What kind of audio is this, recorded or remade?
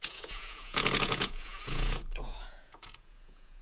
remade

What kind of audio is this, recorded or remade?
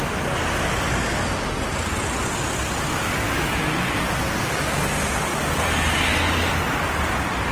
recorded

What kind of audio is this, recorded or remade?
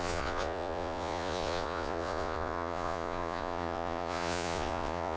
remade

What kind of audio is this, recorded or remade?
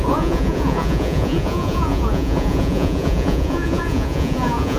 remade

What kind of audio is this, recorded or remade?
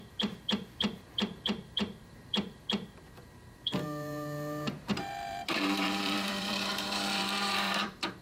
remade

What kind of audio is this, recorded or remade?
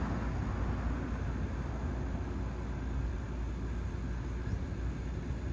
recorded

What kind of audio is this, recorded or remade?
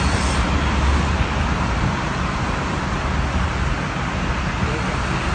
recorded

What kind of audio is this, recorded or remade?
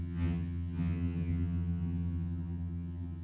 remade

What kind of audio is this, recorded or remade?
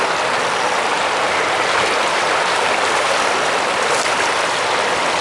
recorded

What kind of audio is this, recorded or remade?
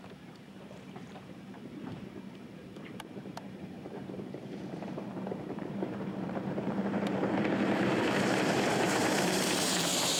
remade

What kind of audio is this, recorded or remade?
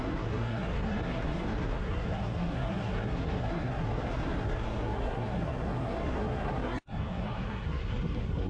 remade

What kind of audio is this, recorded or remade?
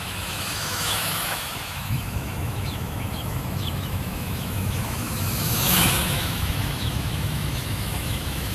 remade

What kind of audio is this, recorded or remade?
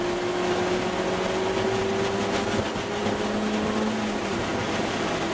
recorded